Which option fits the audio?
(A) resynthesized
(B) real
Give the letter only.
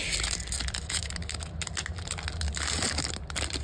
B